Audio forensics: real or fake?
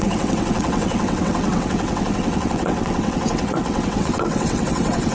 fake